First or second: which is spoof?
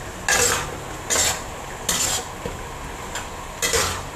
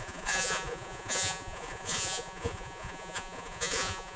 second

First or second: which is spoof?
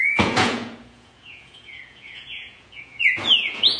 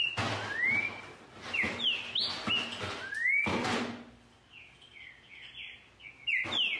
first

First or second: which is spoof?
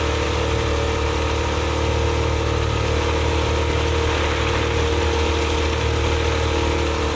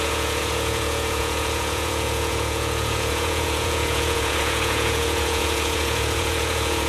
second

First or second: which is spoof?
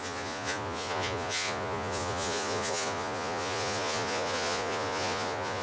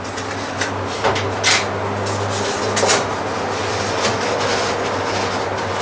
first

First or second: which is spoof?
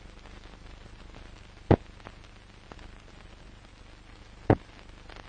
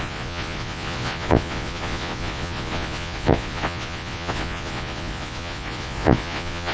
second